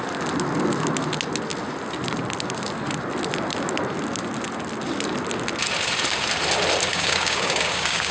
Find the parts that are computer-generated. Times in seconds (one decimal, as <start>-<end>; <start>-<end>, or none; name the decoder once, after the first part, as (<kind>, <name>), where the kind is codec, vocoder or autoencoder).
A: 6.9-8.1 (codec, DAC)